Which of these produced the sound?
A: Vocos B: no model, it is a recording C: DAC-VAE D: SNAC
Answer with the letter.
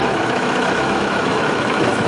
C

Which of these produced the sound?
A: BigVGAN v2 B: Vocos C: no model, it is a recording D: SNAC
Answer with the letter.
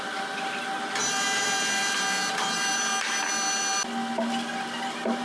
C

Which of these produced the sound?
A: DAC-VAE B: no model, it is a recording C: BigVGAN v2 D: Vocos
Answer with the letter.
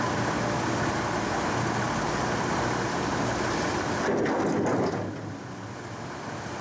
B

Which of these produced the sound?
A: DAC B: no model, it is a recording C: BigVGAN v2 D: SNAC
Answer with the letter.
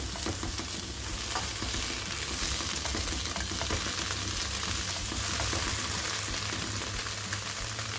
B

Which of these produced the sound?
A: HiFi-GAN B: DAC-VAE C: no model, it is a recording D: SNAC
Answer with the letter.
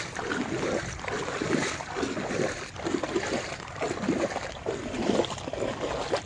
C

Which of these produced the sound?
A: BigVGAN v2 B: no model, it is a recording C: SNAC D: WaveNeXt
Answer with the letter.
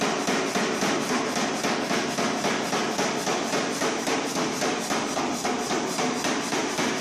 B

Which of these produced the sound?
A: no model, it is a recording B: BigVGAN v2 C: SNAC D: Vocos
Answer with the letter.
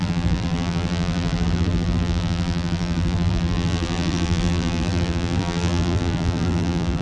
B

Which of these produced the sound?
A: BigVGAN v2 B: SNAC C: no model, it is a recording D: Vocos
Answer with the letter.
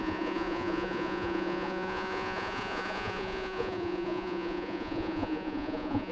D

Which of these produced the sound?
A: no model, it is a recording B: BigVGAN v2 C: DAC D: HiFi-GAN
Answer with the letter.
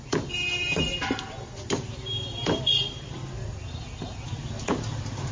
A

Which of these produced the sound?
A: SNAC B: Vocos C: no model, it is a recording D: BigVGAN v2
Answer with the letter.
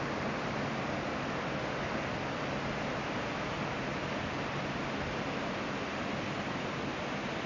C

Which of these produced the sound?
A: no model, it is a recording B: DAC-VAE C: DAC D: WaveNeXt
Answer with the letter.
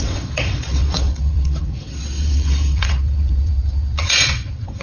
D